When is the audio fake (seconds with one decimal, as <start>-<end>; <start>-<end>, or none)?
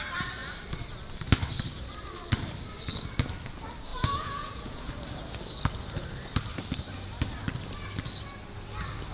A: 3.9-4.9